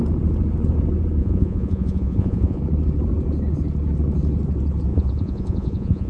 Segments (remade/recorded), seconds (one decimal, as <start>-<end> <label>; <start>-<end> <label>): 0.0-1.2 recorded; 1.2-2.6 remade; 2.6-4.9 recorded; 4.9-6.1 remade